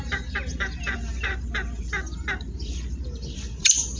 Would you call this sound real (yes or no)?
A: no